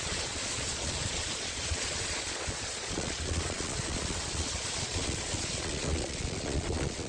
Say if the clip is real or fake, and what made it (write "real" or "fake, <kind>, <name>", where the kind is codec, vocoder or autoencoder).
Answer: fake, vocoder, Vocos